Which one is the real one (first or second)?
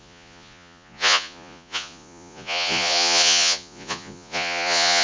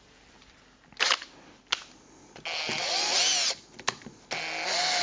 second